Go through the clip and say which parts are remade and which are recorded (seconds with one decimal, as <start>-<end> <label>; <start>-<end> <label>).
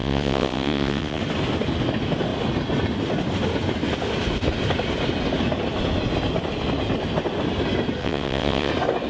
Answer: 0.0-1.2 remade; 1.2-8.0 recorded; 8.0-8.7 remade; 8.7-9.1 recorded